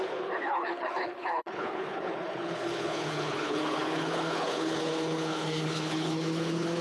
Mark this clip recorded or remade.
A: remade